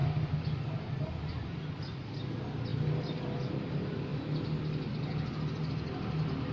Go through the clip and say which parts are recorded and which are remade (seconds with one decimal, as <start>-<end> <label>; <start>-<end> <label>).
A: 0.0-6.5 recorded